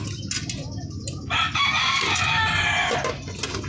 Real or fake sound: real